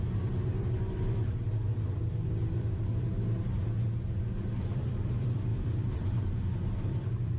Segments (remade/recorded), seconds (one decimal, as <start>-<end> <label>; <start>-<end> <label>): 0.0-3.1 remade; 3.1-4.7 recorded; 4.7-7.4 remade